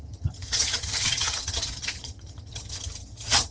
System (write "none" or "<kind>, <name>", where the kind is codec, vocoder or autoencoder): vocoder, HiFi-GAN